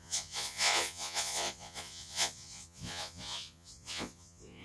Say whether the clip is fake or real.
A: fake